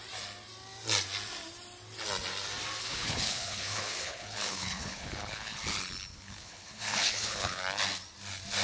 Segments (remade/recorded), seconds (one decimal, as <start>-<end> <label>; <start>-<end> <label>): 0.0-2.8 recorded; 2.8-5.6 remade; 5.6-6.1 recorded; 6.1-7.6 remade; 7.6-8.6 recorded